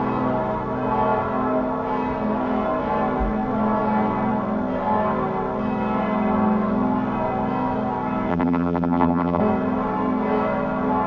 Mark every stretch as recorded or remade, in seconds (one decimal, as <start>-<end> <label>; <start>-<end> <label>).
0.0-8.3 recorded; 8.3-9.4 remade; 9.4-11.1 recorded